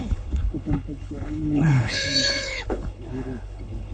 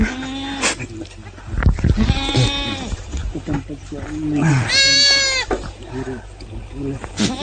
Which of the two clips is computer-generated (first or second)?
first